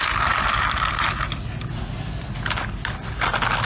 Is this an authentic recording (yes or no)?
yes